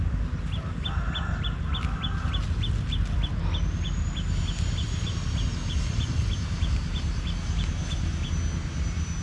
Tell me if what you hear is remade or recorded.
recorded